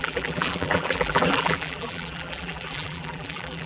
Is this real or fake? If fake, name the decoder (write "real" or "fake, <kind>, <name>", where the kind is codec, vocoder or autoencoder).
fake, vocoder, BigVGAN v2